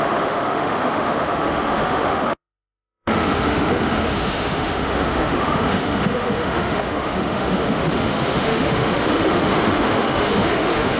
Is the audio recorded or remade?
remade